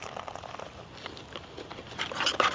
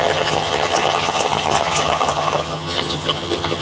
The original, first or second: first